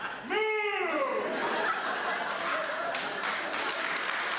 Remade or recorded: recorded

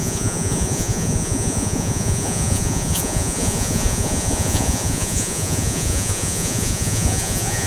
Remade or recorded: remade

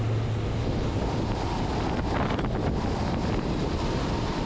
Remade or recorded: recorded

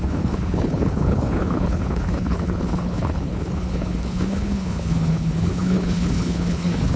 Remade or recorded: remade